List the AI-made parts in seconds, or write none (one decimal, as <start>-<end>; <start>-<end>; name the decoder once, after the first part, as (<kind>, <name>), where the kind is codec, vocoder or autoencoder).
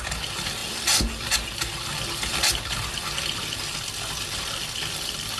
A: none